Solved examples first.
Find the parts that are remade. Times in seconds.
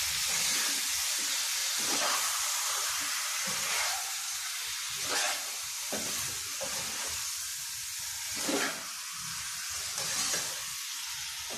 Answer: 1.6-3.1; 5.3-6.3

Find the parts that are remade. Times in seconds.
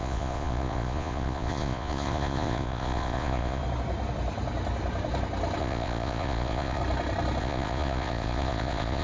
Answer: 0.0-3.6; 5.6-6.8; 7.4-9.0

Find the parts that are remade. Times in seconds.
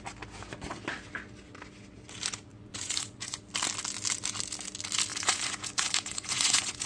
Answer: 2.5-3.4; 5.1-6.9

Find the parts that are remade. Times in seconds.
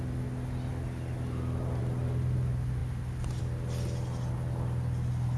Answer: none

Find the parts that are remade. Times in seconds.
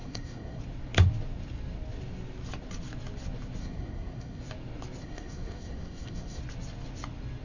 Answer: 0.0-0.6; 3.6-4.4; 5.0-6.4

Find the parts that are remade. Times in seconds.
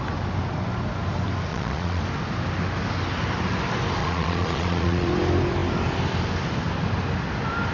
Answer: 1.5-2.0; 4.0-5.1